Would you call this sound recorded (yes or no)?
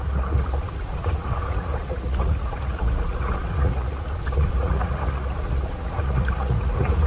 no